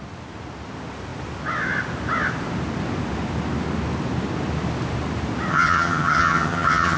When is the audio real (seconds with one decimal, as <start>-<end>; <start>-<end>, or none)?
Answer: 0.0-5.5